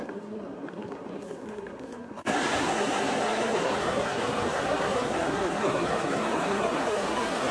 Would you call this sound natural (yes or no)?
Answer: no